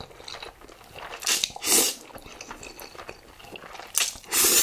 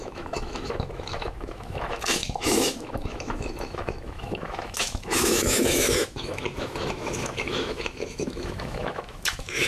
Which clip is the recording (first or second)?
first